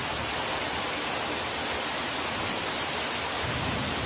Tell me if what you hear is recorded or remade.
recorded